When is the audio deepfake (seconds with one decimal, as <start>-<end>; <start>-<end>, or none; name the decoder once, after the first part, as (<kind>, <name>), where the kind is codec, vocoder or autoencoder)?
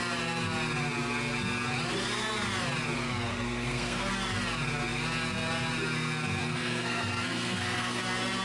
3.3-4.1 (codec, SNAC); 6.4-8.0